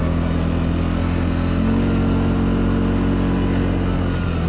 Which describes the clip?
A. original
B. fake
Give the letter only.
A